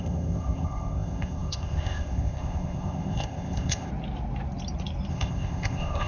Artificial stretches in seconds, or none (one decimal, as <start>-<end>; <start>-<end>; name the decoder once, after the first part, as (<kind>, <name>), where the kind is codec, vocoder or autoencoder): 0.0-3.9 (codec, ZipCodec); 5.1-6.1